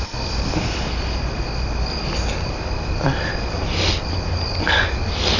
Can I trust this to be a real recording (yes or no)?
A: yes